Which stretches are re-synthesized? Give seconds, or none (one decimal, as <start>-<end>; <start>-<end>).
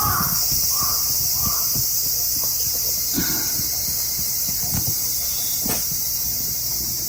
none